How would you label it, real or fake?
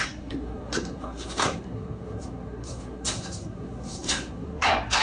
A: fake